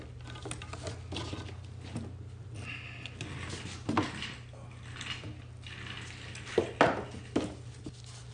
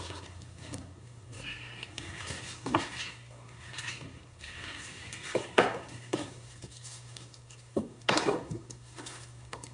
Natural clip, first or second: first